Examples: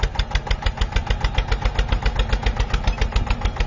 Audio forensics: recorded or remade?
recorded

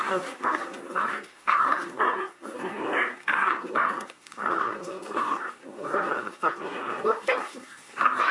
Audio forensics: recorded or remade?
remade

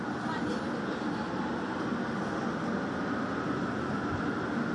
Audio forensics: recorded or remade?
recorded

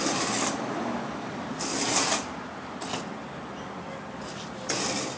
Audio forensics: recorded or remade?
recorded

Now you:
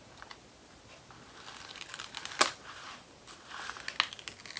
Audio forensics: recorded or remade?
recorded